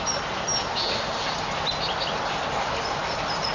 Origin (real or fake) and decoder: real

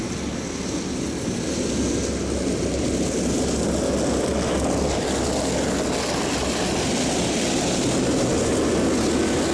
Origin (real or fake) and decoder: real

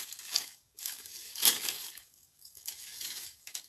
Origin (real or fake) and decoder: fake, codec, DAC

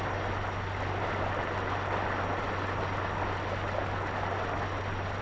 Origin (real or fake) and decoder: real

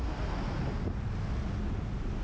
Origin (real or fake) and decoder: real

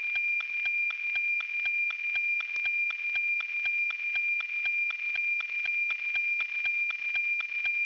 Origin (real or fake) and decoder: real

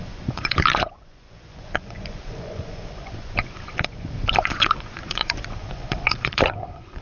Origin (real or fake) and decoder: fake, vocoder, Vocos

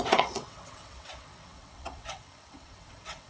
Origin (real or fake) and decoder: fake, vocoder, WaveNeXt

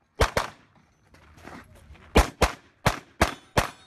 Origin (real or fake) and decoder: real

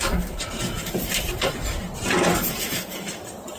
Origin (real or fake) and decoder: real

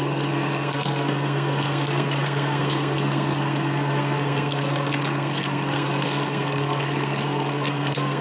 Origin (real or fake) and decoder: fake, codec, SNAC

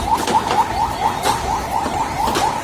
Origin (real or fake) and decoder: real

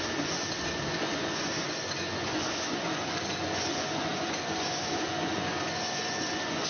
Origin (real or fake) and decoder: fake, vocoder, Vocos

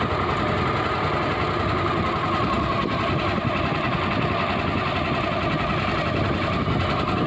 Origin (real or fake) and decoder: real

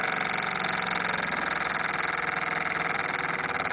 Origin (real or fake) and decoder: real